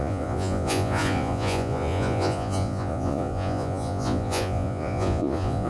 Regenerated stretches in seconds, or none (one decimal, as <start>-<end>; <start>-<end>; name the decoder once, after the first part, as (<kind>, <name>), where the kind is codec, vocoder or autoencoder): 0.0-5.7 (vocoder, Vocos)